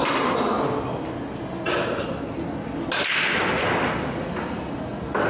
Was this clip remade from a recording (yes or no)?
no